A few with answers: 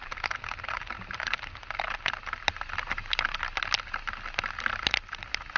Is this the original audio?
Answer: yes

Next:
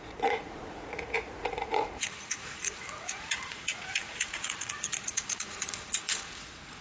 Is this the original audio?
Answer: no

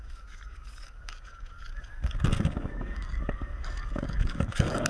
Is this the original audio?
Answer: no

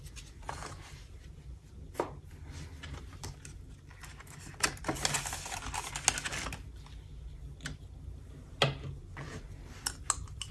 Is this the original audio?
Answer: yes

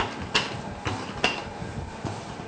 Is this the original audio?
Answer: yes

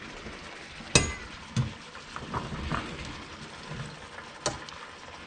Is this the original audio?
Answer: yes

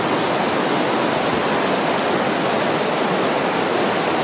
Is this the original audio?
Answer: yes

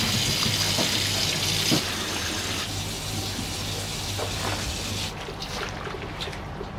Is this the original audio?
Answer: yes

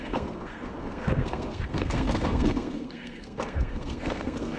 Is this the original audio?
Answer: no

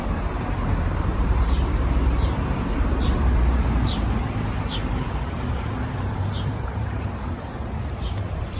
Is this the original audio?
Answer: no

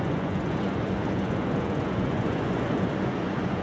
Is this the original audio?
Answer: no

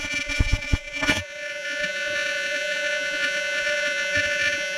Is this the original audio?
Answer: no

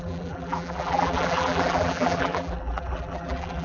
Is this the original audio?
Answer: no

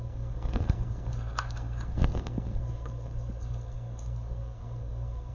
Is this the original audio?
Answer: no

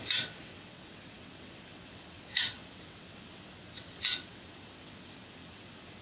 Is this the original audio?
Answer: no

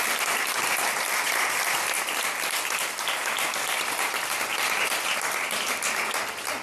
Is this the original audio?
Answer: yes